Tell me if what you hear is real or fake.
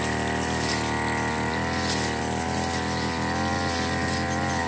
real